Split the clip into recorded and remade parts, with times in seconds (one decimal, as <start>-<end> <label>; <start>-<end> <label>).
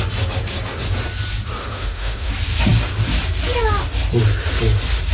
0.0-1.6 recorded; 1.6-2.3 remade; 2.3-5.1 recorded